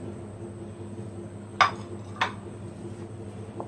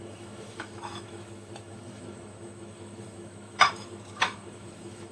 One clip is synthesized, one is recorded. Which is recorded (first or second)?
first